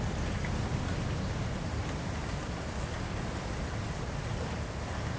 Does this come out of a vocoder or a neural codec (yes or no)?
no